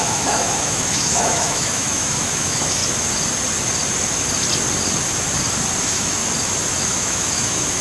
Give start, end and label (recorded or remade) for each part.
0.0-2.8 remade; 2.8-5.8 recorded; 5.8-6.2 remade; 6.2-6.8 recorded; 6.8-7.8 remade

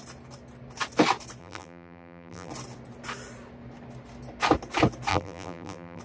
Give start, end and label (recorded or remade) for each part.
0.0-1.4 recorded; 1.4-2.5 remade; 2.5-5.1 recorded; 5.1-6.0 remade

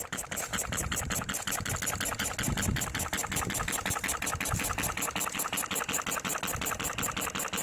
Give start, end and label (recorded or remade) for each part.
0.0-0.5 recorded; 0.5-1.7 remade; 1.7-7.6 recorded

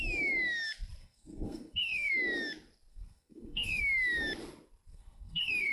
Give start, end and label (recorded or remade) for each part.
0.0-1.0 recorded; 1.0-2.1 remade; 2.1-2.9 recorded; 2.9-3.8 remade; 3.8-4.9 recorded; 4.9-5.7 remade

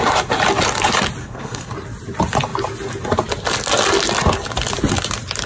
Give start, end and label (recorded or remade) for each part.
0.0-1.2 recorded; 1.2-1.7 remade; 1.7-5.5 recorded

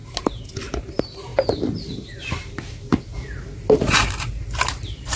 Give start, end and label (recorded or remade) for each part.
0.0-5.2 recorded